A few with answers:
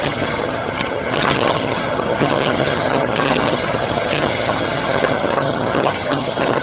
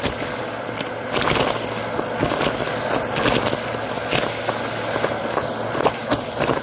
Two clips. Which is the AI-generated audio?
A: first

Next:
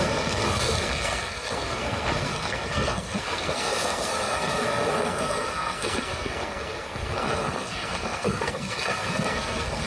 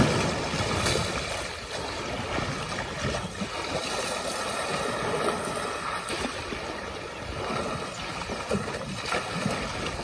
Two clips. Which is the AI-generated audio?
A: first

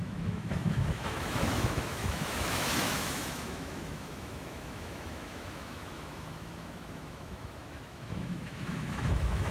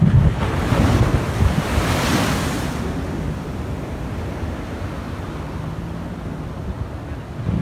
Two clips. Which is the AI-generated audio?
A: first